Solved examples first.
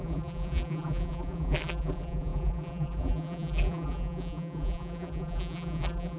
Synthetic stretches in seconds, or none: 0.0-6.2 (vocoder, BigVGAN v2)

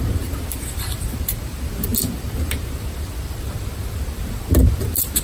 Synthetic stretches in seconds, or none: 0.0-5.2 (vocoder, BigVGAN v2)